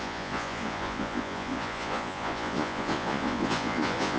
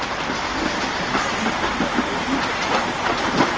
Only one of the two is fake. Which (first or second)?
first